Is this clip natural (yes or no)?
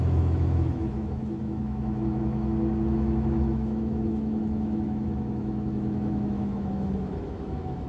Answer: no